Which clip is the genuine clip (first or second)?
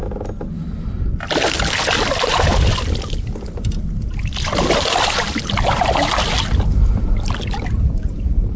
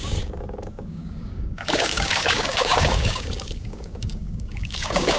first